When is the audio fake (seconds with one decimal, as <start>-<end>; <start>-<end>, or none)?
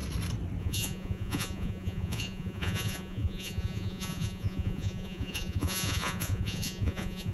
0.6-7.3